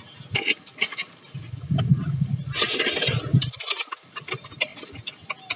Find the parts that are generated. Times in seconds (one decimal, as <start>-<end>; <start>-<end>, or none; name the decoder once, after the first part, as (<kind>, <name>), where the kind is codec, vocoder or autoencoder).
0.7-2.0 (vocoder, BigVGAN v2); 3.3-3.9